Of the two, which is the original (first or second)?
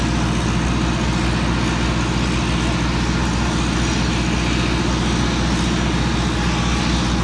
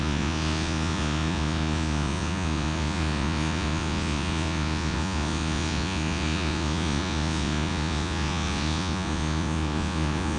first